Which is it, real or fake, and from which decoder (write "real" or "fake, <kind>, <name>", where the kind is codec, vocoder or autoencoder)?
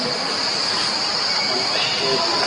real